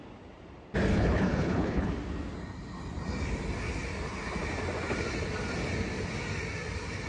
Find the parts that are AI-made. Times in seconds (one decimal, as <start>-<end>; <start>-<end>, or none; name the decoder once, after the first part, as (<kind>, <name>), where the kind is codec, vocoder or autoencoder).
0.9-1.9 (codec, HILCodec)